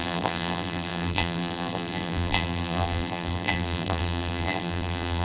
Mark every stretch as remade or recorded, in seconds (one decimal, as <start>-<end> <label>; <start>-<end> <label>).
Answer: 0.0-5.2 remade